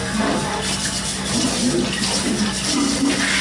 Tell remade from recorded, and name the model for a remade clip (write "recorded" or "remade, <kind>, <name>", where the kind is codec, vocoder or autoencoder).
recorded